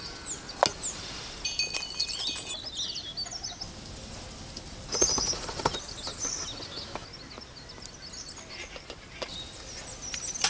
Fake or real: real